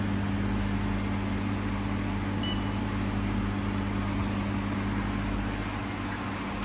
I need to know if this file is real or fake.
real